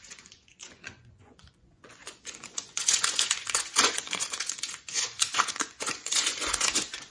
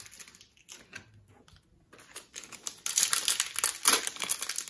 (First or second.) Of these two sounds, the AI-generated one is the first